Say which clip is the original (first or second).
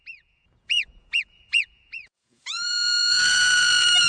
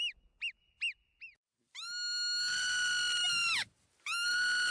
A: second